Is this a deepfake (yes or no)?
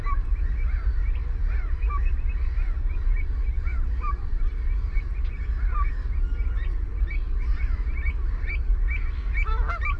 no